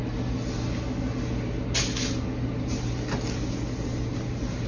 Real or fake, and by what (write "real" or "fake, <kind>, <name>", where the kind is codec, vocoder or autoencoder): real